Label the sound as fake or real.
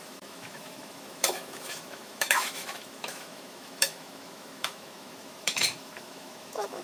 fake